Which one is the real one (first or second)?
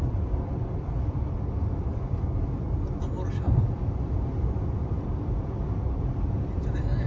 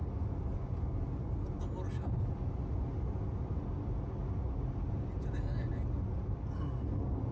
second